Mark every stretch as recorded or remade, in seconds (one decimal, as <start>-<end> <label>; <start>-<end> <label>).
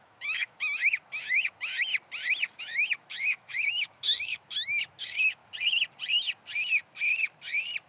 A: 0.0-1.9 remade; 1.9-2.6 recorded; 2.6-5.4 remade; 5.4-7.9 recorded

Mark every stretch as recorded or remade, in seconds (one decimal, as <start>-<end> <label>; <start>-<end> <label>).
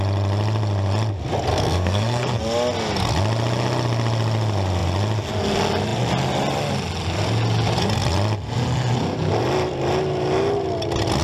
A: 0.0-1.5 recorded; 1.5-2.4 remade; 2.4-11.2 recorded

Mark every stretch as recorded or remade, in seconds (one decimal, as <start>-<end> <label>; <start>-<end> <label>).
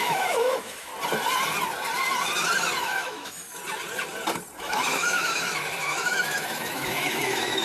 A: 0.0-0.9 remade; 0.9-2.8 recorded; 2.8-3.6 remade; 3.6-4.6 recorded; 4.6-7.6 remade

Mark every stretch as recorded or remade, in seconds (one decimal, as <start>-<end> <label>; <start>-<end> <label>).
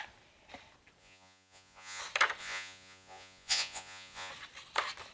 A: 0.0-1.0 recorded; 1.0-2.0 remade; 2.0-2.4 recorded; 2.4-4.3 remade; 4.3-5.1 recorded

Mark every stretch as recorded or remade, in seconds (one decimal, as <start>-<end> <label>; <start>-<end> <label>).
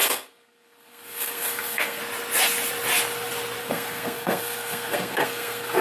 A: 0.0-2.0 remade; 2.0-3.6 recorded; 3.6-5.8 remade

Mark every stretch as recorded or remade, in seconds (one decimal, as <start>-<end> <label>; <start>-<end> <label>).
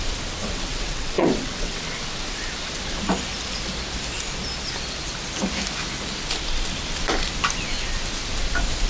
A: 0.0-0.4 recorded; 0.4-1.8 remade; 1.8-8.9 recorded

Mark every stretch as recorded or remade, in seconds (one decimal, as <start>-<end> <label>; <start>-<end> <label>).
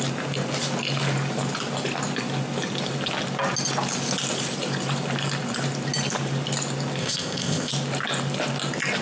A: 0.0-7.0 recorded; 7.0-7.7 remade; 7.7-9.0 recorded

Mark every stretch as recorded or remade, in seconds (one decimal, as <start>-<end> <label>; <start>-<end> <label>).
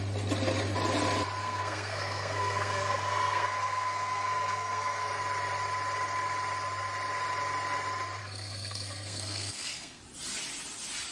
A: 0.0-1.4 recorded; 1.4-5.1 remade; 5.1-8.2 recorded; 8.2-10.0 remade; 10.0-11.1 recorded